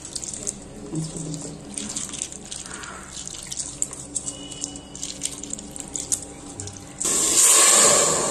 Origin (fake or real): real